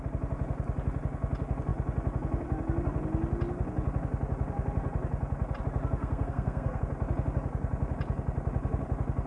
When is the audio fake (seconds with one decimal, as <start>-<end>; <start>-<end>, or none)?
6.0-6.8